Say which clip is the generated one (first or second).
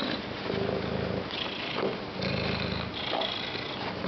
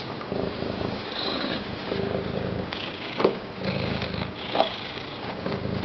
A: second